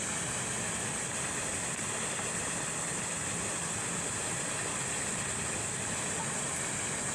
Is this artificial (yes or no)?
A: no